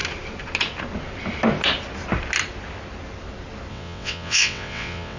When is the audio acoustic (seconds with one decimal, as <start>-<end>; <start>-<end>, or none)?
0.0-3.7